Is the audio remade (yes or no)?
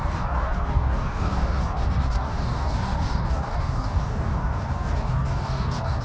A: yes